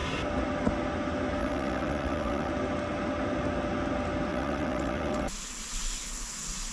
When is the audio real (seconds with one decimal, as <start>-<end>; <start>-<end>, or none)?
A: 0.0-1.4; 2.5-4.3; 5.3-6.7